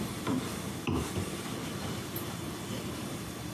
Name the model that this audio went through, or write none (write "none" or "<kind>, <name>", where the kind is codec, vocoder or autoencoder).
none